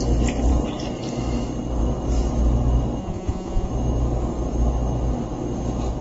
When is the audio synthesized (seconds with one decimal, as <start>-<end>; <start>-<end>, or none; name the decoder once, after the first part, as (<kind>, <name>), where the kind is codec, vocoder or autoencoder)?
3.0-3.7 (vocoder, Vocos)